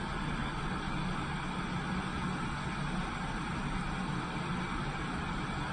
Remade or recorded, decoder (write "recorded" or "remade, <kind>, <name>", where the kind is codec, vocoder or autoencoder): recorded